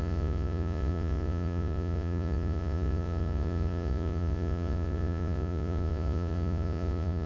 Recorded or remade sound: remade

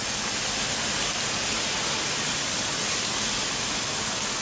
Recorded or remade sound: recorded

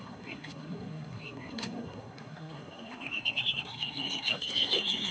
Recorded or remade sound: remade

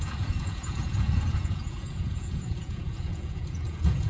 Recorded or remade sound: remade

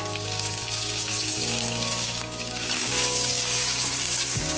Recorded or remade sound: remade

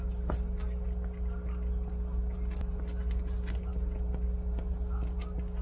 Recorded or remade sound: recorded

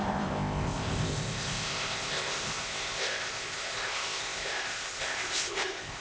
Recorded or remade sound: remade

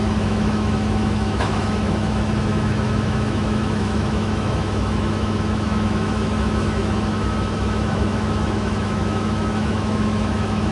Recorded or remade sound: remade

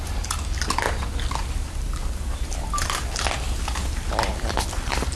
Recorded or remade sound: remade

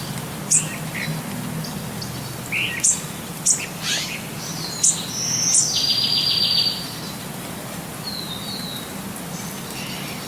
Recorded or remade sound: recorded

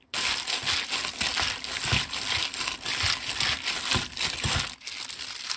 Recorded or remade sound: recorded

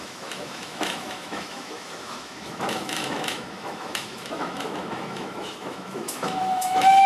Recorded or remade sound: remade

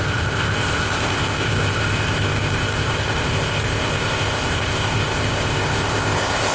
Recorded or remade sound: remade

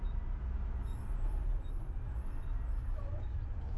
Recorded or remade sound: recorded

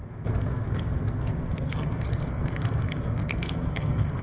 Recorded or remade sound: remade